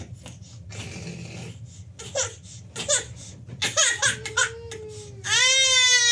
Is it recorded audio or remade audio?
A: recorded